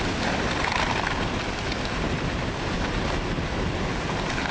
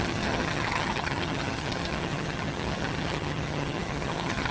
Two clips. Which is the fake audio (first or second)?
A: second